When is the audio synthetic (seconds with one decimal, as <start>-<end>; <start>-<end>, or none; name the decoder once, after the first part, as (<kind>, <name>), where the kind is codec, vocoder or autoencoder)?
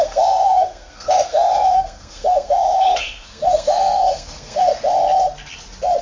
0.0-4.7 (codec, SNAC)